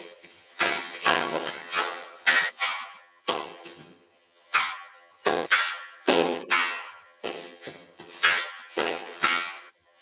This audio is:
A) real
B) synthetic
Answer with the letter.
B